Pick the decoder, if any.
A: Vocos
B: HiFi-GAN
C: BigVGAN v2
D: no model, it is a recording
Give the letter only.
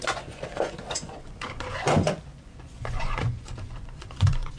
A